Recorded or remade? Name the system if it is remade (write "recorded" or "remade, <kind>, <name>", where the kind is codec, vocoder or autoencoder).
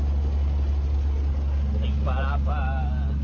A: recorded